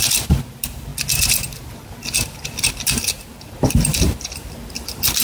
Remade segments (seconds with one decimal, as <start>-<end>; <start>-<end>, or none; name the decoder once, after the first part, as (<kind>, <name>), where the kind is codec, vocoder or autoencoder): 0.0-0.9 (vocoder, BigVGAN v2); 2.6-5.2